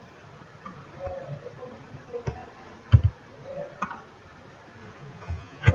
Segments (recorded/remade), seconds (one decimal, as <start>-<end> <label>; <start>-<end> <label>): 0.0-4.8 recorded; 4.8-5.7 remade